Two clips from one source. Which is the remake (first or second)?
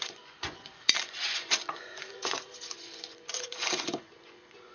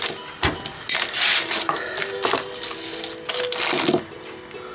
first